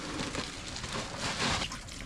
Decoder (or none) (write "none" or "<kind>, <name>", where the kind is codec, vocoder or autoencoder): none